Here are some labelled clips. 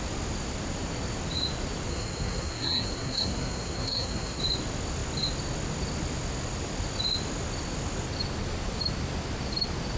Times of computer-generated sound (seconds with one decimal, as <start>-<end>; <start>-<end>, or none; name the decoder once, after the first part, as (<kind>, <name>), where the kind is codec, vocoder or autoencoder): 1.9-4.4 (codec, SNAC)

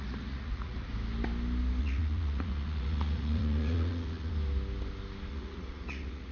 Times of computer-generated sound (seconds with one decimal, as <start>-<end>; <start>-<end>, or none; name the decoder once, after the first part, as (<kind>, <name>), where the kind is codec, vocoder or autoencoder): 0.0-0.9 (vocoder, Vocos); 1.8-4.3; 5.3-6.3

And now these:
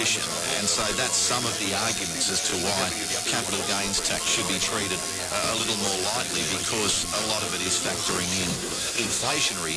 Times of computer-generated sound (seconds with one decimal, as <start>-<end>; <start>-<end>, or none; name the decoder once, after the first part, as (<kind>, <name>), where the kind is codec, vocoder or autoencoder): 8.5-9.3 (codec, SNAC)

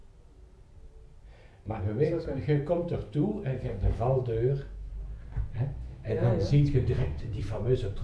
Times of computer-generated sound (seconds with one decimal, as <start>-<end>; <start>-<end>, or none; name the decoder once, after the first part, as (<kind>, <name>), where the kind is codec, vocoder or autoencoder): 1.8-4.9 (autoencoder, DAC-VAE); 5.6-6.2; 6.9-8.0

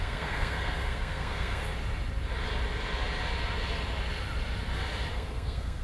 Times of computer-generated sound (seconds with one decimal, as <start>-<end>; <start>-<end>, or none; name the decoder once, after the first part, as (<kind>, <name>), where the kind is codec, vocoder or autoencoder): 0.0-1.6 (codec, SNAC); 5.1-5.8

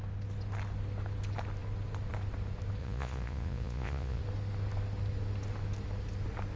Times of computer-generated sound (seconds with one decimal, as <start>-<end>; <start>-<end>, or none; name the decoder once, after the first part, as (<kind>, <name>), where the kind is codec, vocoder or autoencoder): 2.8-4.2 (vocoder, Vocos)